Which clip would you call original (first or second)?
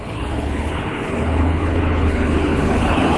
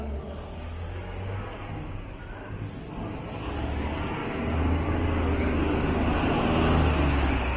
second